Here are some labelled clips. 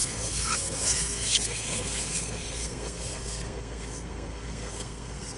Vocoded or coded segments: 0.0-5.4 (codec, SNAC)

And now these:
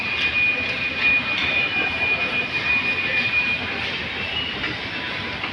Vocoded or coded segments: 1.4-2.7 (vocoder, BigVGAN v2); 3.1-4.9

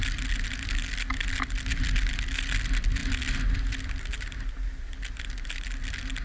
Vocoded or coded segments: none

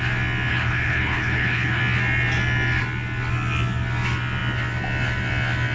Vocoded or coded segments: 0.5-1.8 (codec, HILCodec)

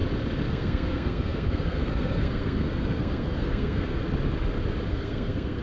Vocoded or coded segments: 0.5-4.0 (codec, SNAC); 4.9-5.6

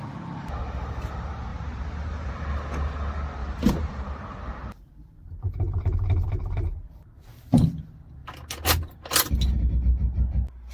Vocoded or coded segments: 1.5-2.3 (vocoder, BigVGAN v2); 3.4-6.3

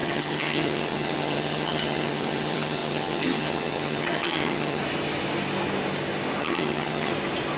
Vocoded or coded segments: 0.0-4.8 (vocoder, HiFi-GAN); 6.4-7.1

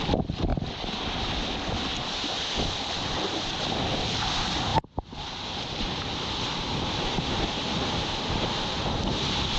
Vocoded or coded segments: none